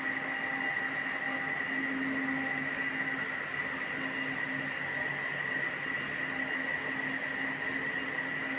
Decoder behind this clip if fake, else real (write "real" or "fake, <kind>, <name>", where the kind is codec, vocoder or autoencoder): real